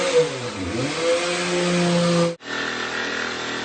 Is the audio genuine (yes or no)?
yes